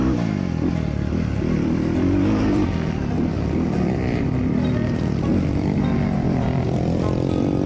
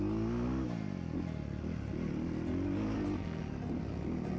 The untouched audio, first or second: second